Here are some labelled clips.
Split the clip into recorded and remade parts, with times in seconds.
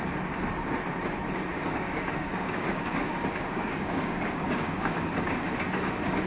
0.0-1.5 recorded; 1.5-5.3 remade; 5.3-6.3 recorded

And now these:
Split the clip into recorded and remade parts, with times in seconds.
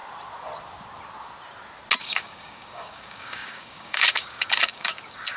0.0-2.0 recorded; 2.0-5.4 remade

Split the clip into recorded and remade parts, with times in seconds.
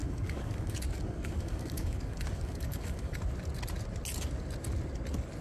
0.0-3.2 remade; 3.2-5.4 recorded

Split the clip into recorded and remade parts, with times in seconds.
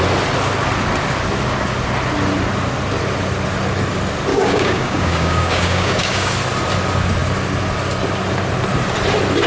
0.0-4.3 recorded; 4.3-6.3 remade; 6.3-9.5 recorded